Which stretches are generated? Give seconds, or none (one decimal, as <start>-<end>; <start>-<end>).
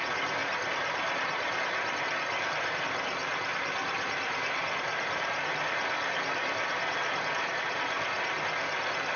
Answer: 0.4-2.8; 3.2-7.8